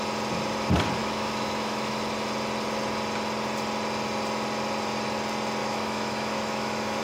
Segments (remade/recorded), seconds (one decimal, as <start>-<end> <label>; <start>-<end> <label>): 0.0-1.0 recorded; 1.0-1.9 remade; 1.9-5.6 recorded; 5.6-7.0 remade